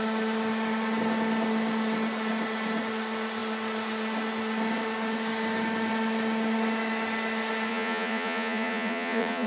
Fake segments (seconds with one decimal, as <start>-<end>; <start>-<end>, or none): 7.7-9.5